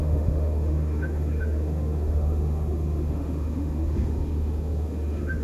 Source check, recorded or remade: remade